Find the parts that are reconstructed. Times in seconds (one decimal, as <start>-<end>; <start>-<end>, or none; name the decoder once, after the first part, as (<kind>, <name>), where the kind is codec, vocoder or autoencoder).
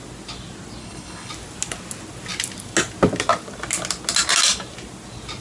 0.8-1.3 (codec, HILCodec)